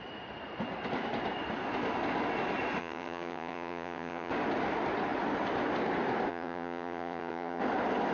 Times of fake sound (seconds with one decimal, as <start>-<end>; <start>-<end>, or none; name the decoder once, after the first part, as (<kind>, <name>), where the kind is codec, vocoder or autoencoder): 2.8-4.3 (vocoder, HiFi-GAN); 6.3-7.6